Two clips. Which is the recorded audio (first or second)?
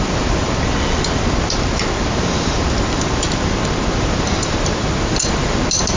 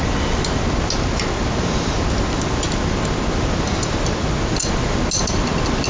second